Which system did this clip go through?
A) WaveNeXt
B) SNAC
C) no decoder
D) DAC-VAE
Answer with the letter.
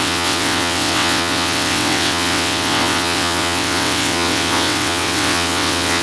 A